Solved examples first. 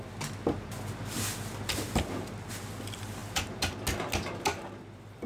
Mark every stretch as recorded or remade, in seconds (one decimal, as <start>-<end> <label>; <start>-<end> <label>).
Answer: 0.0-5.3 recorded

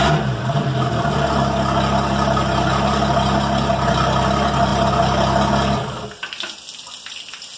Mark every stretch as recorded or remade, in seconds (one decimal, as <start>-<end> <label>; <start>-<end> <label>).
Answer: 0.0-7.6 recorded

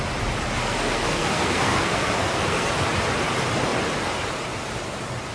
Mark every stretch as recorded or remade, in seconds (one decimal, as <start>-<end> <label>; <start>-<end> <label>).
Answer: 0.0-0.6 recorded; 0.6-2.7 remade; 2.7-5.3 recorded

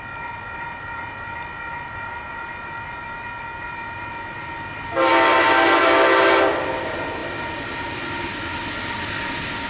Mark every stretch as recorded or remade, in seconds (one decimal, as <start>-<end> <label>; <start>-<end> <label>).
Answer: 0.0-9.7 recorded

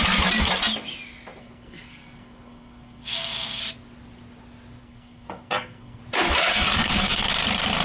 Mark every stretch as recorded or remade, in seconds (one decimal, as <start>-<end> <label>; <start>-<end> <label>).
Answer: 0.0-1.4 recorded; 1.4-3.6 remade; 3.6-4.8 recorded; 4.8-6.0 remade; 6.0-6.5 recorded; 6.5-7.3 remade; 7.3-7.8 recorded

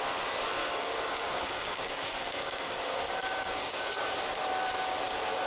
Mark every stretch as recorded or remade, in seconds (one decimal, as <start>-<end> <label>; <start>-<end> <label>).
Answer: 0.0-0.6 recorded; 0.6-3.9 remade; 3.9-5.5 recorded

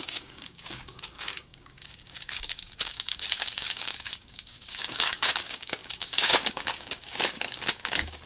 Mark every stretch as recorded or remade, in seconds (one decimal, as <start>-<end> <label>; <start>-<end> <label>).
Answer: 0.0-8.3 remade

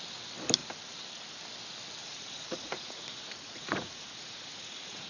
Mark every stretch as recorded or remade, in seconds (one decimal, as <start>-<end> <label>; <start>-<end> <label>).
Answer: 0.0-2.0 recorded; 2.0-5.1 remade